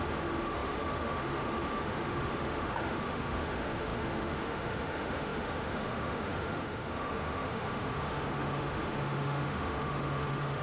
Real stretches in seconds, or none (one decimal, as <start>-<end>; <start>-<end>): none